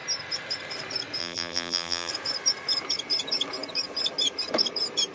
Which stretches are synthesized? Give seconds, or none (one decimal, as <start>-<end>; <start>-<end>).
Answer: 1.2-2.1